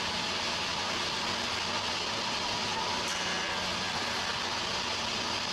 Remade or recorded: recorded